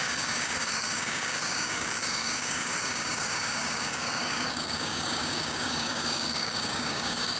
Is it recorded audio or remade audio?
remade